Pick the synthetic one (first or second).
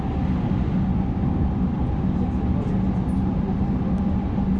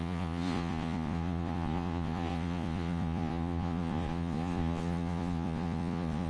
second